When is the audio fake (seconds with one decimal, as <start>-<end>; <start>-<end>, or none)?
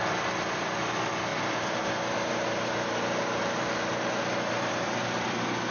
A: none